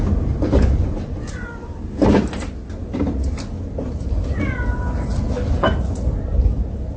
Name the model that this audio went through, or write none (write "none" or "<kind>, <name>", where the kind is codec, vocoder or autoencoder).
none